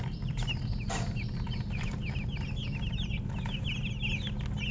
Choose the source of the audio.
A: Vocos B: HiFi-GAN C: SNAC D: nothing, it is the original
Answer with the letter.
D